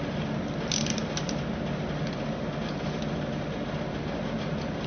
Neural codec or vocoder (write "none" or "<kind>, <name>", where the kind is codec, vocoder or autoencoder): none